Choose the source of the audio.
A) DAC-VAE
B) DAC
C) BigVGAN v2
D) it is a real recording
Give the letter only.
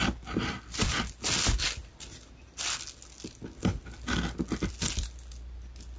D